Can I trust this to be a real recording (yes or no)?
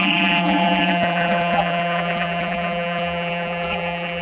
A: no